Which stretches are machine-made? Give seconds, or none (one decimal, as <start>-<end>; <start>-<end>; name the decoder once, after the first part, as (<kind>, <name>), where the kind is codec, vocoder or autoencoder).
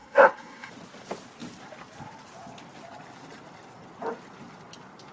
0.0-0.7 (codec, SNAC)